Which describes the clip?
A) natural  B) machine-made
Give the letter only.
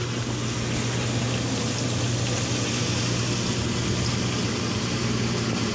A